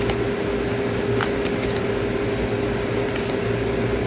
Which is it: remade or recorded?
recorded